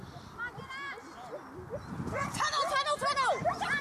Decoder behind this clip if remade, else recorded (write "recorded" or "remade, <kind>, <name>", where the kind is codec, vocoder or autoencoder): recorded